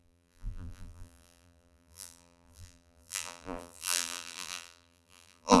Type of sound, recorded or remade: remade